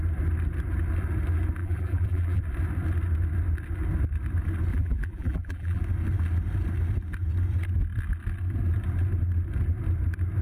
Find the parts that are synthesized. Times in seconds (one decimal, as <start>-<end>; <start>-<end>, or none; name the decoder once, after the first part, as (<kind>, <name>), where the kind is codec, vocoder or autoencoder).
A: 1.6-2.4 (vocoder, BigVGAN v2); 4.7-5.8